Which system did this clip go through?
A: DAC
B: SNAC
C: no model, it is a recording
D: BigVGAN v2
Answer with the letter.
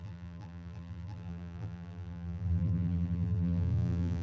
D